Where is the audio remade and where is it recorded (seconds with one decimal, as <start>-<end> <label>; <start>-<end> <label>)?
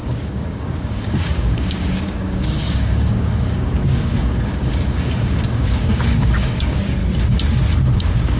0.0-7.0 remade; 7.0-8.0 recorded; 8.0-8.4 remade